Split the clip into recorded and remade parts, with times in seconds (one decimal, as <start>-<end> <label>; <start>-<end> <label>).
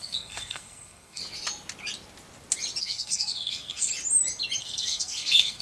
0.0-1.2 remade; 1.2-2.8 recorded; 2.8-3.9 remade; 3.9-4.6 recorded; 4.6-5.6 remade